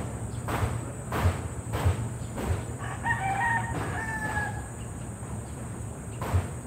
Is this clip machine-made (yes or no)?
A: yes